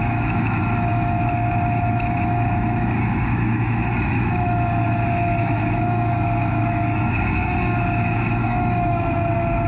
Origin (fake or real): fake